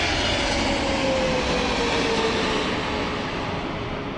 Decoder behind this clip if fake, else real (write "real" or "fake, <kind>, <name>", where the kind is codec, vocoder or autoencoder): real